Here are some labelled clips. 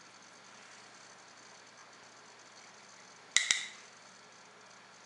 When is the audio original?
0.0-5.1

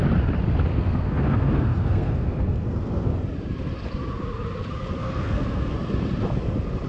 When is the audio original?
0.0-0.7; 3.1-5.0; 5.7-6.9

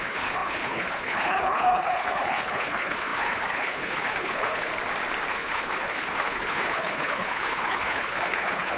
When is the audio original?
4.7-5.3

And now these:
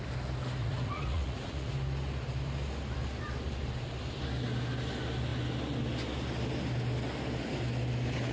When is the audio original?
0.0-0.6; 1.7-8.3

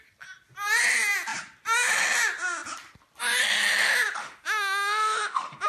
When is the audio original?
0.0-4.2

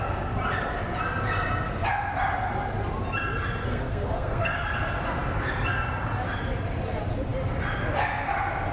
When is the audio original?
0.0-3.7; 4.7-8.7